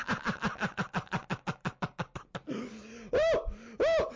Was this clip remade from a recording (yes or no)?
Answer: no